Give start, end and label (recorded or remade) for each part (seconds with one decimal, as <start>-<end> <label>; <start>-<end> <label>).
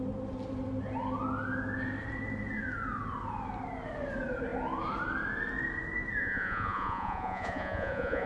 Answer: 0.0-6.2 recorded; 6.2-8.3 remade